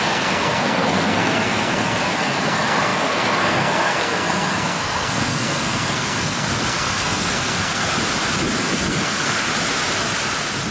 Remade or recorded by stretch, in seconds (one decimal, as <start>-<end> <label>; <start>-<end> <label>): 0.0-7.9 remade; 7.9-8.6 recorded; 8.6-9.5 remade; 9.5-10.7 recorded